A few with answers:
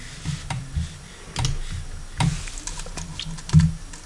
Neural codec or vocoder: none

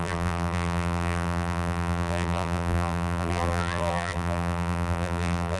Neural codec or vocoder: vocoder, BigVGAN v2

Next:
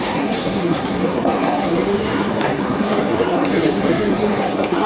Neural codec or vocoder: codec, SNAC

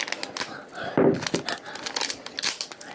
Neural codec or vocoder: none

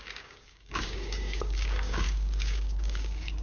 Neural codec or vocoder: codec, DAC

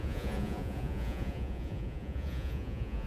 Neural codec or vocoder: vocoder, Vocos